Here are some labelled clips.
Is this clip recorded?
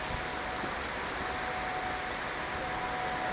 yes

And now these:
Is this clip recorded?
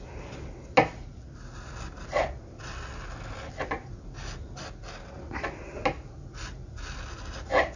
yes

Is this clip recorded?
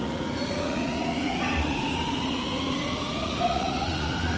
no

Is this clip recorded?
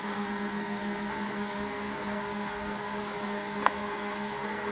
no